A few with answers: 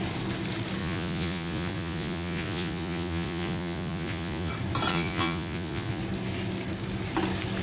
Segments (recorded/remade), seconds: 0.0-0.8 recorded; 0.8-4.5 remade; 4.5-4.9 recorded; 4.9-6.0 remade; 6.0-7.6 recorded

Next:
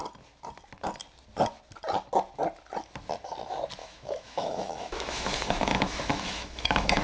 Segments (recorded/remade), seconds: 0.0-3.8 recorded; 3.8-7.0 remade

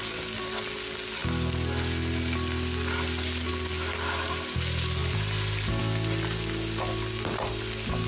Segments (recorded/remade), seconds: 0.0-8.1 recorded

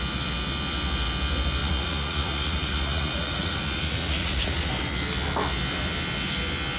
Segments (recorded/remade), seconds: 0.0-1.6 recorded; 1.6-4.7 remade; 4.7-6.8 recorded

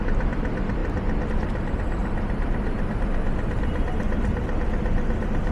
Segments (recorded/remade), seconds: 0.0-2.0 recorded; 2.0-3.0 remade; 3.0-5.5 recorded

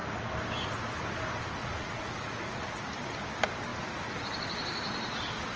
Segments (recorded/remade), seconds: 0.0-1.6 recorded; 1.6-2.8 remade; 2.8-5.6 recorded